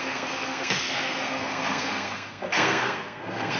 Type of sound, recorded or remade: remade